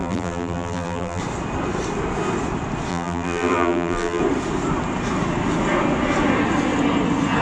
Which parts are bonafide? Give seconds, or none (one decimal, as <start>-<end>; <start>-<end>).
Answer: 1.2-2.9; 4.2-7.4